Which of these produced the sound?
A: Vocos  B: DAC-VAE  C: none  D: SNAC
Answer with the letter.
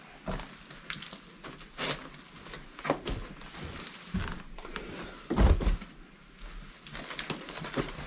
C